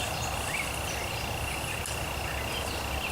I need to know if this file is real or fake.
real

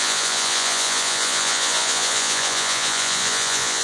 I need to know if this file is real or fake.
fake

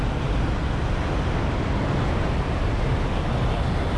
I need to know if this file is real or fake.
real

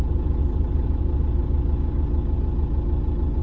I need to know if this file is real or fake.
real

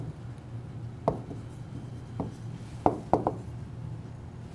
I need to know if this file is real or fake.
real